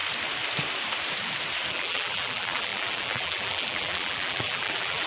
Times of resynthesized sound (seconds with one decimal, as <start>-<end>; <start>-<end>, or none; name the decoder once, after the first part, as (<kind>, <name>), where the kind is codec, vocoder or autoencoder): 1.7-5.1 (vocoder, BigVGAN v2)